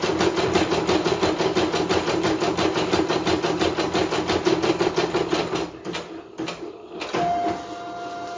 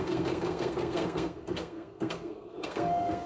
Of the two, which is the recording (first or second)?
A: first